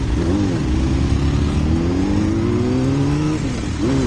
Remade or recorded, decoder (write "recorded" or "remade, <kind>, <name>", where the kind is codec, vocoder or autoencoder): recorded